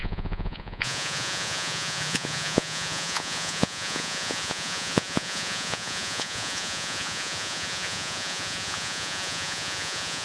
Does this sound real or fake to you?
fake